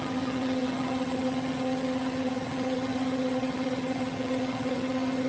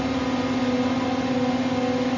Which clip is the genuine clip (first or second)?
second